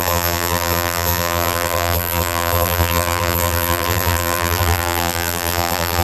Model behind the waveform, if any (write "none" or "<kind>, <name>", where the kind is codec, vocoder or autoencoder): vocoder, BigVGAN v2